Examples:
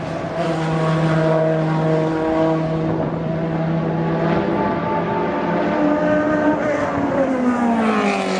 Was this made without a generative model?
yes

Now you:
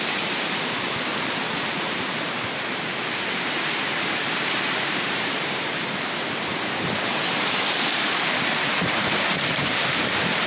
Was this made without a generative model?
no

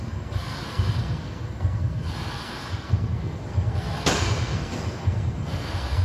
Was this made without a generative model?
no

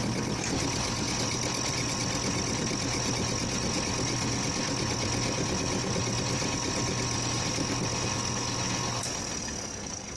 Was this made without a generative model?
yes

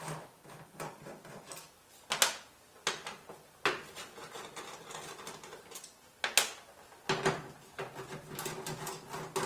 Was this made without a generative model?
yes